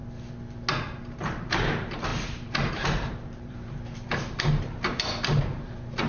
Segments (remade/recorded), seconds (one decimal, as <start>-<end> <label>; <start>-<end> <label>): 0.0-0.7 recorded; 0.7-6.1 remade

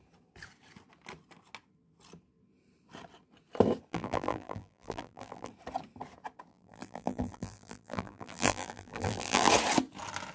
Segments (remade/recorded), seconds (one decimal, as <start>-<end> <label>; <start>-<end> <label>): 0.0-3.9 recorded; 3.9-5.5 remade; 5.5-6.5 recorded; 6.5-9.5 remade; 9.5-10.3 recorded